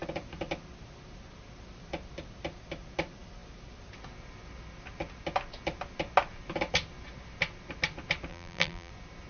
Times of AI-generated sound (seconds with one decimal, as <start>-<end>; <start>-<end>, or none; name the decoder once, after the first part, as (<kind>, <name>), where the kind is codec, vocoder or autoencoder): 8.3-8.9 (vocoder, BigVGAN v2)